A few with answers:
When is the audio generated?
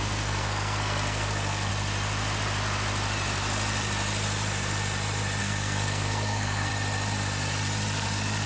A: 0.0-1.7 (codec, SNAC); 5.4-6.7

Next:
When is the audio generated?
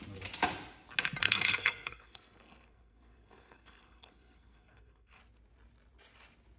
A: 1.2-5.2 (codec, SNAC)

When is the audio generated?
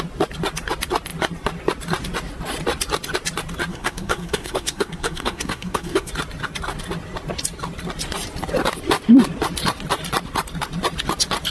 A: 3.7-6.1 (codec, SNAC)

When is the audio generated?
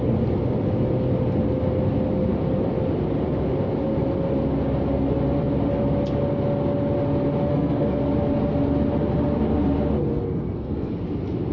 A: 7.5-8.0 (codec, SNAC); 10.1-11.0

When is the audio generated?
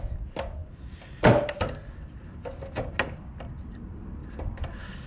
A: none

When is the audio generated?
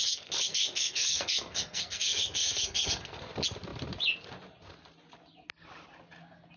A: 0.0-3.3 (codec, SNAC)